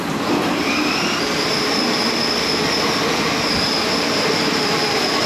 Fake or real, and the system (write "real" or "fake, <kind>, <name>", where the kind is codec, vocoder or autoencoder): fake, vocoder, BigVGAN v2